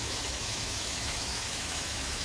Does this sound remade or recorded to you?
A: remade